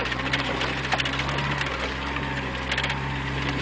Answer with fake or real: real